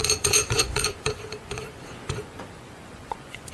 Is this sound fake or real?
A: fake